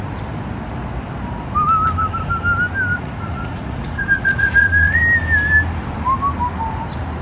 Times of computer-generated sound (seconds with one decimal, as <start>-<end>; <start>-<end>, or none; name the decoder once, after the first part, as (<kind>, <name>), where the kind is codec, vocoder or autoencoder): 2.9-5.0 (vocoder, Vocos)